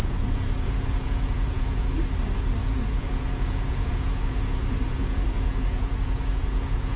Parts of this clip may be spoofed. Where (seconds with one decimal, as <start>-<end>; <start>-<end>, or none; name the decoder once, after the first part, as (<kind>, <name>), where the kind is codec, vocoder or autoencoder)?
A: 0.0-1.9 (vocoder, Vocos); 2.6-7.0